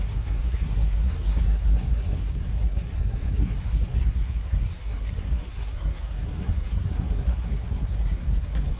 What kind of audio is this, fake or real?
fake